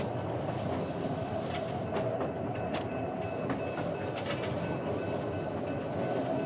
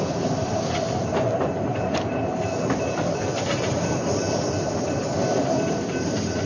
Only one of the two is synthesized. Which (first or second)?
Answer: second